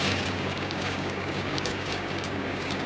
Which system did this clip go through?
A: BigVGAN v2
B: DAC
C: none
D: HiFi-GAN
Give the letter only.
B